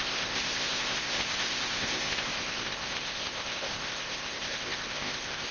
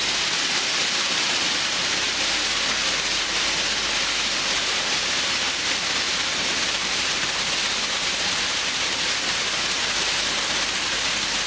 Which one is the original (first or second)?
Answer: second